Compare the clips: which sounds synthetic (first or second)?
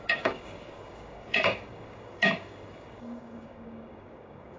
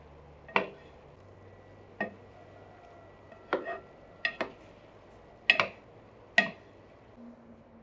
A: first